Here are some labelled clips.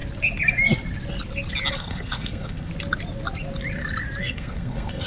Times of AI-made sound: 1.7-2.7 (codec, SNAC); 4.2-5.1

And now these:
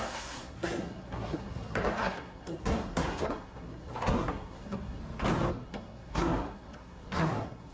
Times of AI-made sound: 0.0-5.0 (codec, SNAC); 5.5-7.7